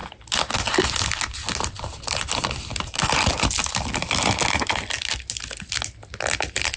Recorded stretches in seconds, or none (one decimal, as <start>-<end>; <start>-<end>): 0.0-6.8